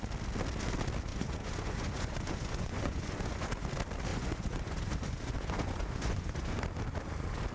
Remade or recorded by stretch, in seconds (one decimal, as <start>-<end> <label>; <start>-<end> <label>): 0.0-1.1 recorded; 1.1-3.5 remade; 3.5-4.1 recorded; 4.1-6.6 remade; 6.6-7.5 recorded

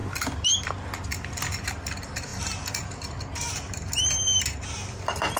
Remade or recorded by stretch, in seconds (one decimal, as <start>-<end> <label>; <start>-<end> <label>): 0.0-5.4 recorded

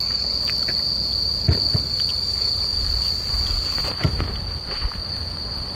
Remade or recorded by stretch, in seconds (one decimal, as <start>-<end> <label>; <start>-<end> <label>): 0.0-1.3 recorded; 1.3-2.1 remade; 2.1-2.7 recorded; 2.7-3.7 remade; 3.7-5.8 recorded

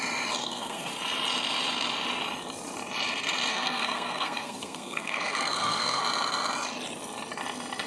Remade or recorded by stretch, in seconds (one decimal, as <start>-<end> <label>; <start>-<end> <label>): 0.0-0.4 recorded; 0.4-0.9 remade; 0.9-3.5 recorded; 3.5-6.0 remade; 6.0-7.9 recorded